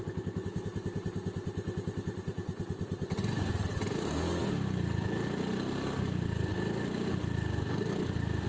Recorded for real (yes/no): yes